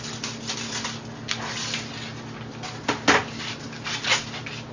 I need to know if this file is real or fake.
real